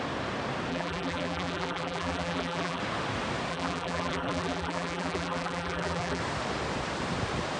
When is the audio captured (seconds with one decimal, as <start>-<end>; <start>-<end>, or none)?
0.0-0.7; 2.8-3.5; 6.2-7.6